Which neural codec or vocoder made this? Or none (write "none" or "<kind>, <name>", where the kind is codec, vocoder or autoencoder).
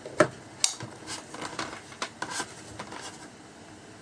none